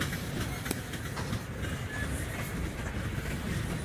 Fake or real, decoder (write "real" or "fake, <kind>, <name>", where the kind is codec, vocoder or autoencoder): real